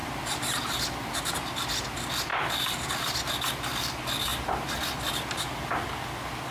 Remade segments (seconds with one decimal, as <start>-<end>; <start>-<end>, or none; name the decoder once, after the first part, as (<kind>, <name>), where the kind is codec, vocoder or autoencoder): 0.0-1.2 (vocoder, BigVGAN v2); 2.3-3.2